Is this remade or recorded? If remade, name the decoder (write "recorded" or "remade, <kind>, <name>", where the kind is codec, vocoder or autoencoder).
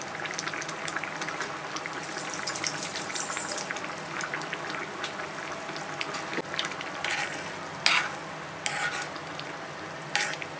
recorded